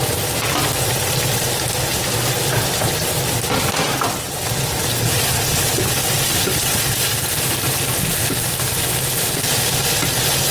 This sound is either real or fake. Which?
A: fake